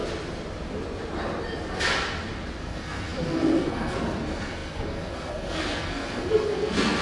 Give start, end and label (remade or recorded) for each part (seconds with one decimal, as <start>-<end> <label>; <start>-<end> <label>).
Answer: 0.0-2.6 recorded; 2.6-7.0 remade